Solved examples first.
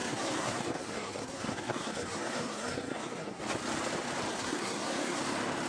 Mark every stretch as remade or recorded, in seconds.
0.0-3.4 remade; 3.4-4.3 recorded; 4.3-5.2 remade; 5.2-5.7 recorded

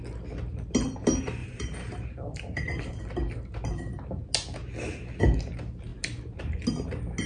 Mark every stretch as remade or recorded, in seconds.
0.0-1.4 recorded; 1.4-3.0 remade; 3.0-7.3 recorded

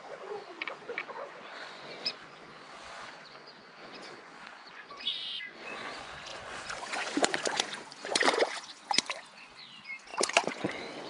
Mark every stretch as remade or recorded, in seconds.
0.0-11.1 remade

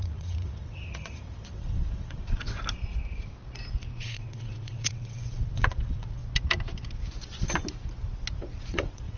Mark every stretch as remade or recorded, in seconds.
0.0-2.6 remade; 2.6-4.0 recorded; 4.0-6.2 remade; 6.2-8.7 recorded; 8.7-9.2 remade

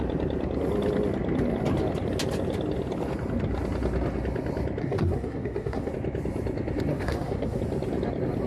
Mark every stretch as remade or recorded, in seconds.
0.0-4.8 recorded; 4.8-5.9 remade; 5.9-6.9 recorded; 6.9-7.6 remade; 7.6-8.5 recorded